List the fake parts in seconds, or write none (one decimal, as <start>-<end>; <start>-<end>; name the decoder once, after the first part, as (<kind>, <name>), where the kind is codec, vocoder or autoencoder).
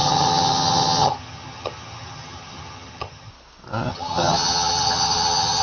0.0-3.3 (vocoder, HiFi-GAN); 3.9-5.6